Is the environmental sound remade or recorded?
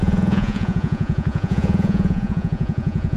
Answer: remade